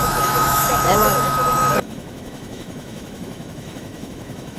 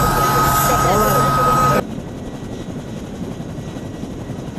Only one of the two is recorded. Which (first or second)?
second